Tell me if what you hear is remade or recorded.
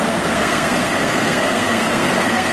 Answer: remade